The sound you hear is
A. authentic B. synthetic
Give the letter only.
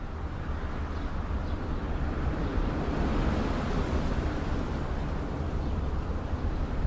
A